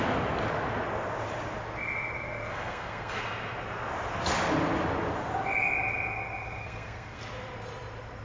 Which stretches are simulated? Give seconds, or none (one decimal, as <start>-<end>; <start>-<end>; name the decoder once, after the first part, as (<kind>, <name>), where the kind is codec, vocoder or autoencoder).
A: 2.5-3.2 (codec, SNAC); 6.6-7.2

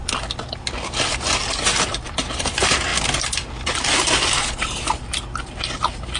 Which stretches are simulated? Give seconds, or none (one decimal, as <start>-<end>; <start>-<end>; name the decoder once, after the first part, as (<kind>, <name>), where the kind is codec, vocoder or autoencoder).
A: none